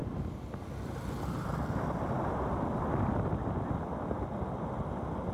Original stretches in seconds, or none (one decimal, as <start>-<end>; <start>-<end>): 0.0-5.3